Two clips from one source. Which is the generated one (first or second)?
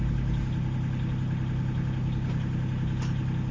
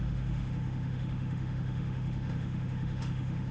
second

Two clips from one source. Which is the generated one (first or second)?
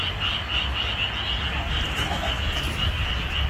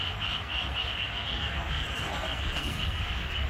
second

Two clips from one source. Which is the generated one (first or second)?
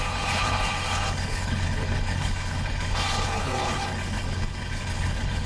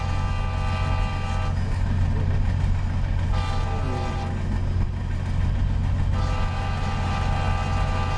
first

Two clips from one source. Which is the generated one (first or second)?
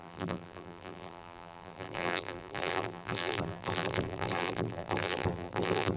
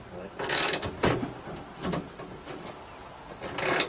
first